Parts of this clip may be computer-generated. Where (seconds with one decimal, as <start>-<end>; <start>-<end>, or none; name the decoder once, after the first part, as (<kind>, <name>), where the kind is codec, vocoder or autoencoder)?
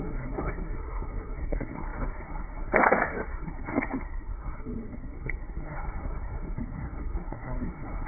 0.0-8.1 (codec, SNAC)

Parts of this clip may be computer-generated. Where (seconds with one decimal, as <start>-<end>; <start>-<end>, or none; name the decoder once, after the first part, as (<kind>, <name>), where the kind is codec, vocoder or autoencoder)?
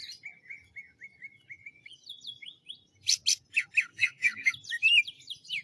3.9-4.5 (codec, SNAC)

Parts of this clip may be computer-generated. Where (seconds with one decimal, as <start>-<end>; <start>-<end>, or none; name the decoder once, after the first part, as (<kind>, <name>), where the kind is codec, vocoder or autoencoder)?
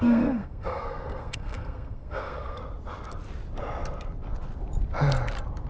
0.0-2.6 (codec, SNAC)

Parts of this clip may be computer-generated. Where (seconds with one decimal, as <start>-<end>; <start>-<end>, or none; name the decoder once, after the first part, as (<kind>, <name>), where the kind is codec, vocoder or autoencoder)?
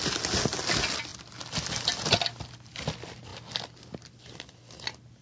none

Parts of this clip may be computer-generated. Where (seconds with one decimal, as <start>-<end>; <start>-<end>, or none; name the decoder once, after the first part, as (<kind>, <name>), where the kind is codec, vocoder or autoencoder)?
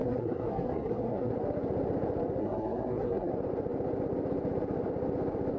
0.0-1.3 (codec, SNAC); 2.4-3.3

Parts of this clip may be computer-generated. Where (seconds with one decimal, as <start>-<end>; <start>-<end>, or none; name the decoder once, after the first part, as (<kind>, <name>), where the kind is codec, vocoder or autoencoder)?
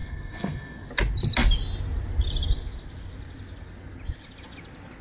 0.0-0.9 (codec, SNAC)